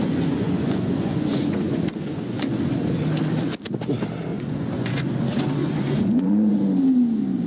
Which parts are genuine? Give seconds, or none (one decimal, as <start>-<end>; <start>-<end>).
2.5-4.3; 5.0-5.6; 6.5-7.5